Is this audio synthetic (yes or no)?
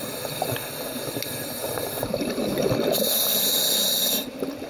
no